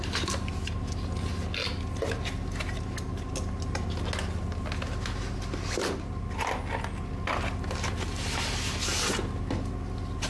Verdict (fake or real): real